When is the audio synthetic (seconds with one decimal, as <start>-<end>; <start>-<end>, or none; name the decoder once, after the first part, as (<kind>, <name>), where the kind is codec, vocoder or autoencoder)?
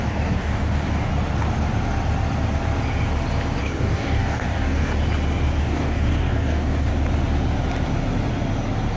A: 0.0-1.1 (codec, DAC); 3.6-4.9; 5.6-6.9